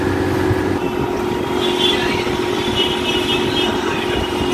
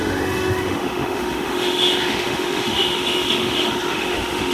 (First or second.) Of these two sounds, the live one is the first